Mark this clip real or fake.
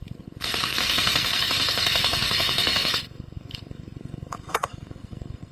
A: fake